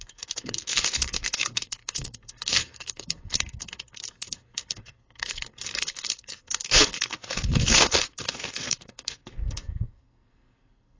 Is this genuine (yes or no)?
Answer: no